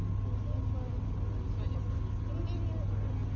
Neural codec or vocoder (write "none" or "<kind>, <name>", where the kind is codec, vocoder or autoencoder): none